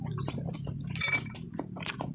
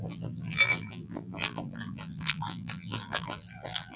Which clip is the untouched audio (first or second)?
first